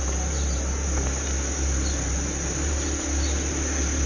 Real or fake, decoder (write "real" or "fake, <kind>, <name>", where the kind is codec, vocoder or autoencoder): real